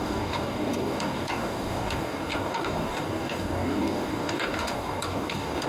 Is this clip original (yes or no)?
no